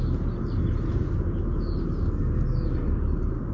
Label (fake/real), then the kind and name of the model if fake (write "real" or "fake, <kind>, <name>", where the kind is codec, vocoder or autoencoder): real